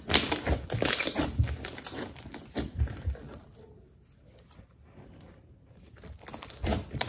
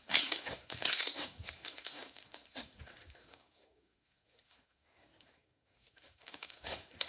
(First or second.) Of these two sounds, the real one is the first